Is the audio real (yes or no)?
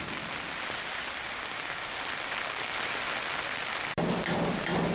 yes